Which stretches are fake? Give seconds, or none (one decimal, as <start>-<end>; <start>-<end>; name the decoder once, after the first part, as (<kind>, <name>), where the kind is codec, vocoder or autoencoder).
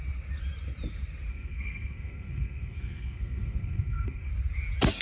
1.3-4.3 (codec, SNAC)